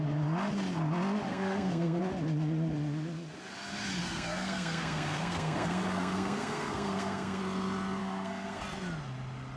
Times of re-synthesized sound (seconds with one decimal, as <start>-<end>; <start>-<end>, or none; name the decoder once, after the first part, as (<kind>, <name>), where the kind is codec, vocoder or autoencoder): 1.3-2.0 (codec, SNAC); 4.0-7.4; 8.0-8.6